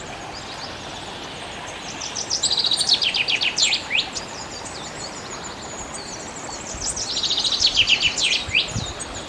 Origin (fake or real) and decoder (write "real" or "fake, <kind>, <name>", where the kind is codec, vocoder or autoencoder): real